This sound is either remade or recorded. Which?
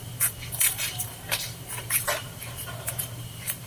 remade